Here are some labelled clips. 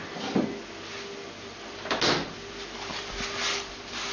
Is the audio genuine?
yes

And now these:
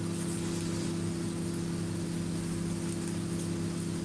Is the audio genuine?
yes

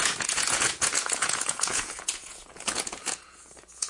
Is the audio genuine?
no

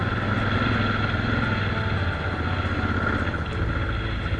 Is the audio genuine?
yes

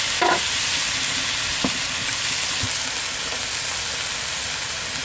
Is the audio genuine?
yes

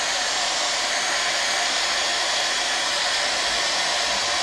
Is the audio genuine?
no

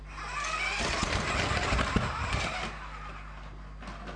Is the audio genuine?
yes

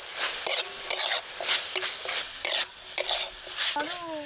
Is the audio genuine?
yes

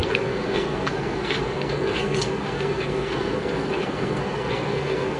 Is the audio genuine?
no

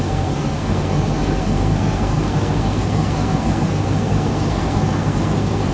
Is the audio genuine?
no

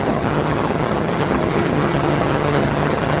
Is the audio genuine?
no